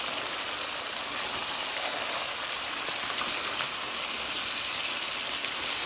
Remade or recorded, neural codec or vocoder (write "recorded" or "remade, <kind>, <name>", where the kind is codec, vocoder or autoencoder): recorded